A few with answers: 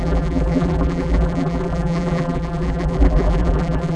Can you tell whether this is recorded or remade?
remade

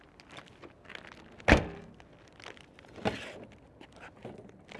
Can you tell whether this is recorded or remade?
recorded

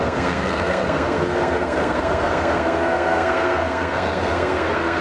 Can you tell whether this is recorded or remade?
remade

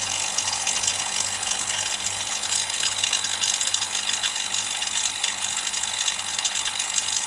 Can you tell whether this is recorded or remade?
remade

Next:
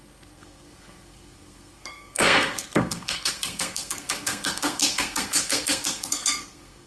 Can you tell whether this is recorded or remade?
remade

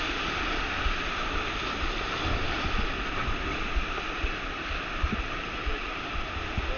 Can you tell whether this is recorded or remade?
recorded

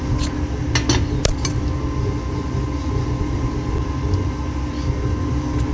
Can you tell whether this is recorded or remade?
recorded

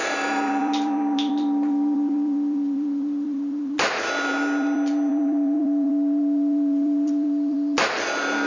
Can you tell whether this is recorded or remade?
remade